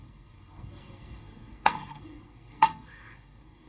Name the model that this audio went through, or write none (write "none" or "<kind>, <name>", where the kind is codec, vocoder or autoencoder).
codec, SNAC